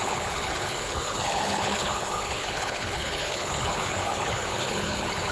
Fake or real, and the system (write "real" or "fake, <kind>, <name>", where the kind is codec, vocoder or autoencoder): fake, codec, HILCodec